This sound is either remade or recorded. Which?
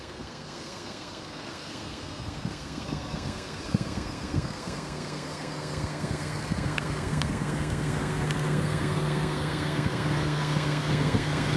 remade